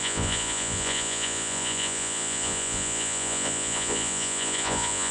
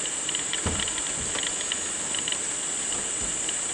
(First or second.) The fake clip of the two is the first